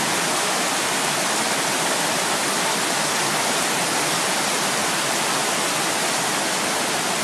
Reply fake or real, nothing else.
real